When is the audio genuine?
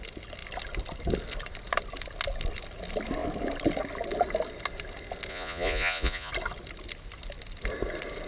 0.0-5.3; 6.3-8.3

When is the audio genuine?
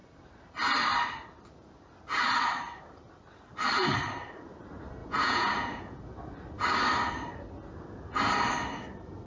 0.0-5.0; 6.0-9.3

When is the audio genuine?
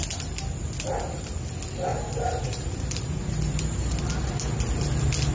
0.0-1.9; 4.0-5.3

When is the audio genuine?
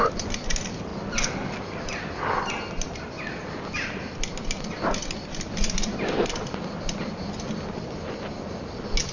0.0-9.1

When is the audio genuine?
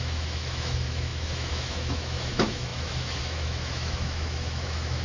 none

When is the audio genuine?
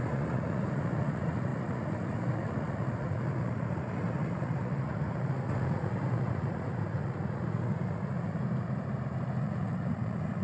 8.4-9.4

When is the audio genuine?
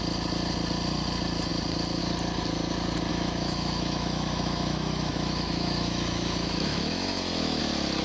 0.0-3.1; 7.6-8.0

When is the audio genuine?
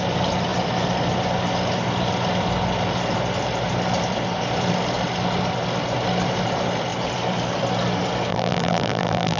0.0-8.3